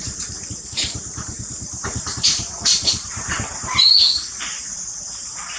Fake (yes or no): yes